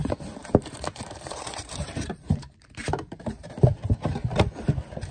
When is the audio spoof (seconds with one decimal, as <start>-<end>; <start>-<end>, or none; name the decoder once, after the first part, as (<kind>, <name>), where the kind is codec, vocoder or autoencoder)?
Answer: 0.4-3.5 (vocoder, BigVGAN v2)